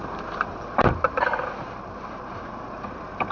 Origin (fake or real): fake